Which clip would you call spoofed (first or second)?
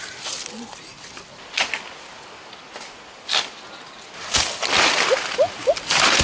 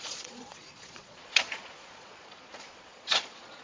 second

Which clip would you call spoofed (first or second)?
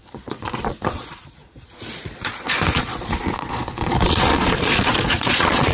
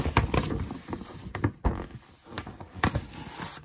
first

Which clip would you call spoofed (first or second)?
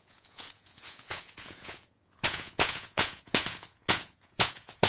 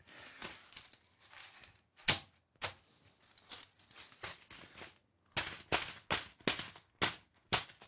first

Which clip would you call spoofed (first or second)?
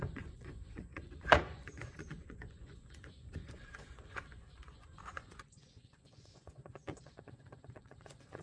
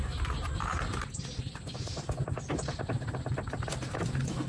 first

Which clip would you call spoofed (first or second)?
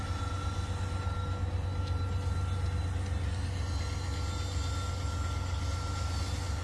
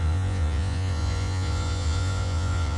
second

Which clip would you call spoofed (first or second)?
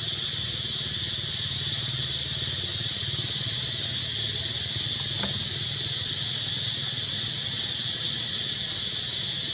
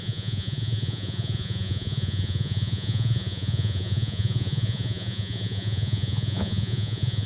second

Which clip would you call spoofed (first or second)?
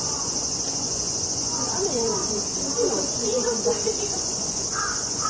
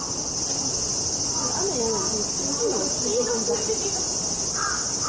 first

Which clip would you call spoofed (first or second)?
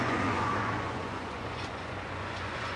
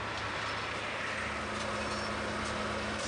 first